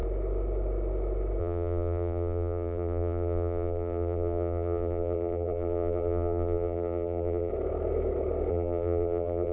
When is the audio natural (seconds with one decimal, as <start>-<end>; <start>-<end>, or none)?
0.0-1.4; 7.5-8.5